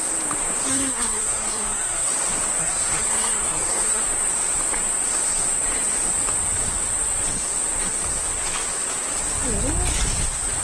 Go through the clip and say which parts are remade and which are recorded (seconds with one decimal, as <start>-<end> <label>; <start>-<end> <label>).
0.0-0.7 recorded; 0.7-2.1 remade; 2.1-2.6 recorded; 2.6-4.0 remade; 4.0-10.6 recorded